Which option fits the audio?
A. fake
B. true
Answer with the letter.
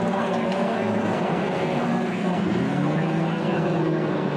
A